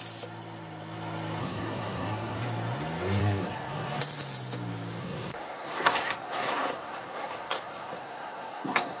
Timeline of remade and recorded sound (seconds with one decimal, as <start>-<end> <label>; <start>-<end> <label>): 0.0-1.4 recorded; 1.4-2.4 remade; 2.4-3.2 recorded; 3.2-4.0 remade; 4.0-5.0 recorded; 5.0-9.0 remade